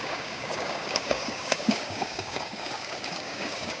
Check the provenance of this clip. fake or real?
fake